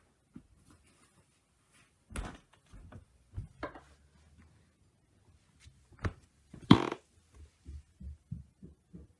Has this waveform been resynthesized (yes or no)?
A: no